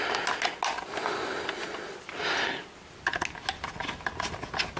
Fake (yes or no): no